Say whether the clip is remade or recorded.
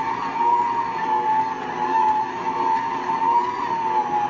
recorded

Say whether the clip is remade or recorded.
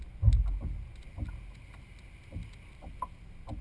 recorded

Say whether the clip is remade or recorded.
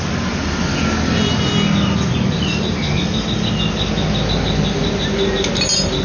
recorded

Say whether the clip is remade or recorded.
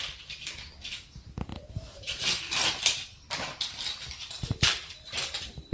recorded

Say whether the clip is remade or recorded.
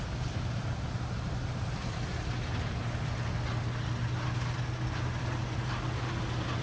recorded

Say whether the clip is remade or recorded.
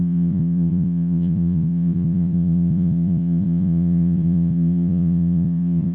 remade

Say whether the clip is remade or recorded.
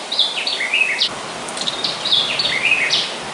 recorded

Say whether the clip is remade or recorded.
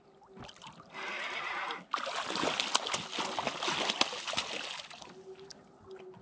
recorded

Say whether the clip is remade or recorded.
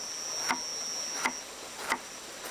recorded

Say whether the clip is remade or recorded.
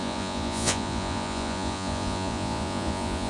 remade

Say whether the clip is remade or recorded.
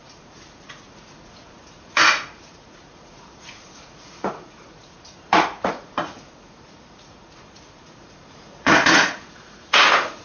remade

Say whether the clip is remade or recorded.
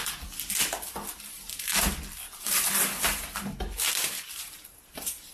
recorded